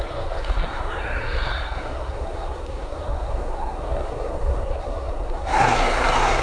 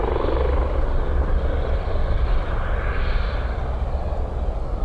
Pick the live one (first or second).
second